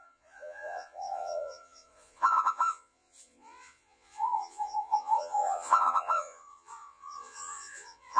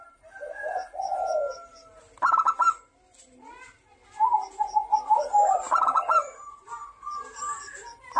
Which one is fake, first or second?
first